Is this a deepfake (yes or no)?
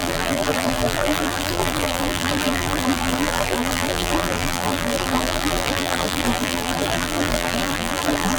yes